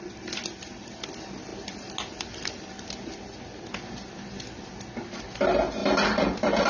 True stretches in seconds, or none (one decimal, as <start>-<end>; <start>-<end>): 0.0-5.8